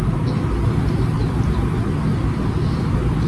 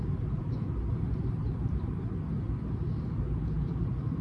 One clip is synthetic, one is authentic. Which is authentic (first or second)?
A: first